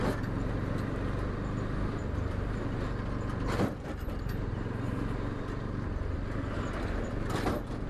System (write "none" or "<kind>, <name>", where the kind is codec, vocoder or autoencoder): none